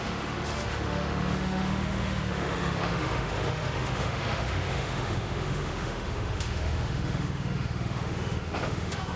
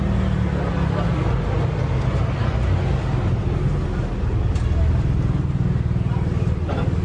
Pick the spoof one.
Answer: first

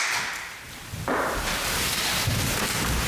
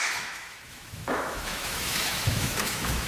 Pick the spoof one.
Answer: second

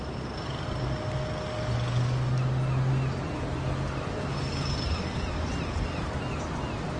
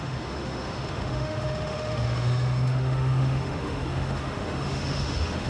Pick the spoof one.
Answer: second